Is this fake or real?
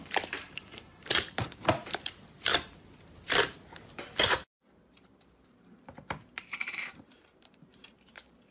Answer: fake